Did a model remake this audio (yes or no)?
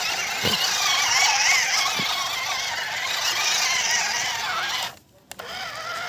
no